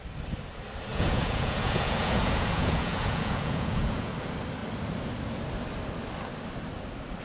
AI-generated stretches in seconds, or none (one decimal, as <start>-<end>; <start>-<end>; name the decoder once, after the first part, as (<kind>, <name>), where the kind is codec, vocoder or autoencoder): 0.9-4.1 (vocoder, Vocos)